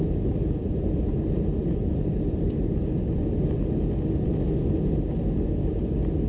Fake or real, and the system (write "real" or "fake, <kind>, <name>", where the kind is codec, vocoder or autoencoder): real